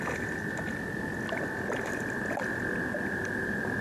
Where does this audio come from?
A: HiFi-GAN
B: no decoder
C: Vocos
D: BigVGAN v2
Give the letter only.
B